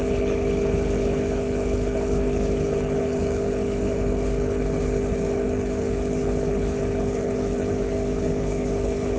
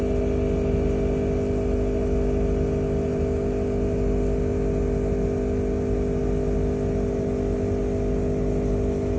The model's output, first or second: first